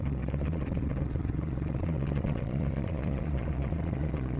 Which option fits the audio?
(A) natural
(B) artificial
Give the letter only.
B